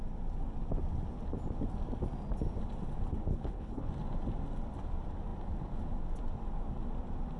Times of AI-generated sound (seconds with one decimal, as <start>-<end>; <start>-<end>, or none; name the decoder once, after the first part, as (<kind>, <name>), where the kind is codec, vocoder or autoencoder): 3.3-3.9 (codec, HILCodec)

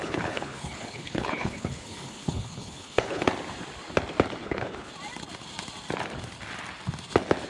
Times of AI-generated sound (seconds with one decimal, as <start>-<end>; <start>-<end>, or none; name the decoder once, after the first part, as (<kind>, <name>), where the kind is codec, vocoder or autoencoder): 0.0-3.3 (codec, HILCodec); 4.4-4.9

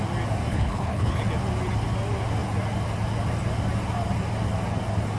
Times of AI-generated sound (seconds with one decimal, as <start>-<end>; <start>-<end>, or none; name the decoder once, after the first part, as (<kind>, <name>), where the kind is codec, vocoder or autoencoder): 0.5-1.2 (codec, HILCodec)